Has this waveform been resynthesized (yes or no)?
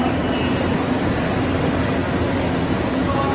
yes